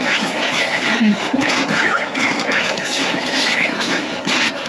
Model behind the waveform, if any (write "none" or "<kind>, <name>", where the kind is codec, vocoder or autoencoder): codec, SNAC